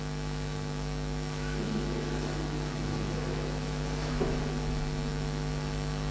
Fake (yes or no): yes